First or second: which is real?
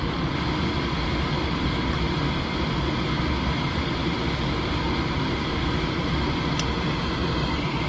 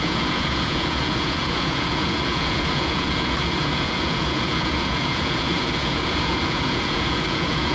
first